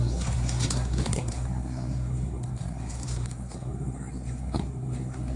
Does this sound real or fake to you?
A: fake